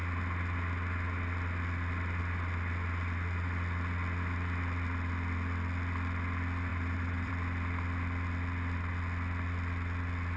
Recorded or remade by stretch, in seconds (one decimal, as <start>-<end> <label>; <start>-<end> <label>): 0.0-6.7 recorded; 6.7-7.3 remade; 7.3-10.4 recorded